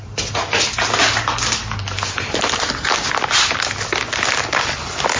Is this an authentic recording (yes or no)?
yes